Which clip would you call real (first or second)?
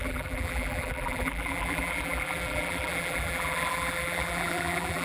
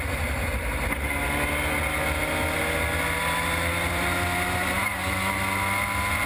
second